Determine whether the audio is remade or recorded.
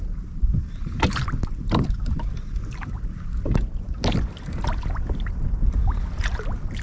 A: recorded